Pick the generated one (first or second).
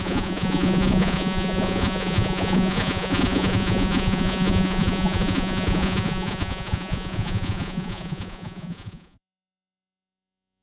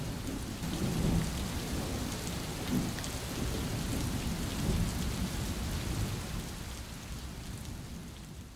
first